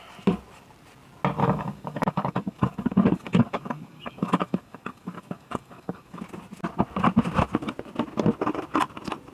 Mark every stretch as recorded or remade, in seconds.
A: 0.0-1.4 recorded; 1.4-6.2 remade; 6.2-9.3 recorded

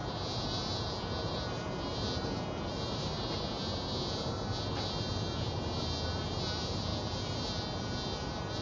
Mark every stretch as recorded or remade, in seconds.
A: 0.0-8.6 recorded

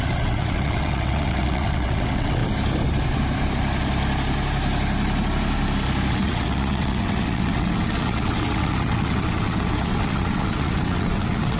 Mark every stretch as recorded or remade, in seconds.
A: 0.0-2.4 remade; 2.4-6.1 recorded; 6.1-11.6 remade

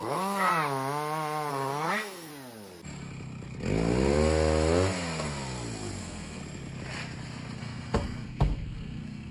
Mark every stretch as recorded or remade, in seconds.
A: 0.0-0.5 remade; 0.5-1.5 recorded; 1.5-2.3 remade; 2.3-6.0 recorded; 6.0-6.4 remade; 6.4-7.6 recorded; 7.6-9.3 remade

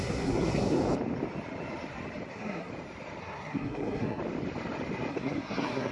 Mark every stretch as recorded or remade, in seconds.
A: 0.0-0.8 remade; 0.8-2.3 recorded; 2.3-2.7 remade; 2.7-3.2 recorded; 3.2-4.2 remade; 4.2-5.1 recorded; 5.1-5.9 remade